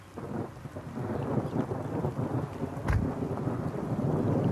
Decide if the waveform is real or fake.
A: real